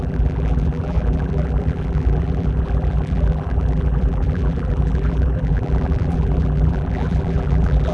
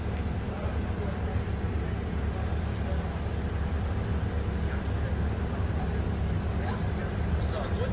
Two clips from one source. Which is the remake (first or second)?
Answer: first